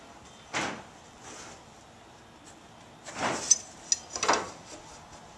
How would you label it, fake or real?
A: real